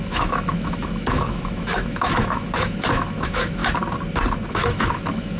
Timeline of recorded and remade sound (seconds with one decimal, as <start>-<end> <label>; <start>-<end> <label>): 0.0-3.6 remade; 3.6-4.5 recorded; 4.5-5.4 remade